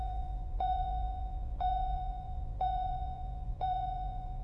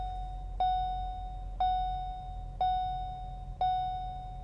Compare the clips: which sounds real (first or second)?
second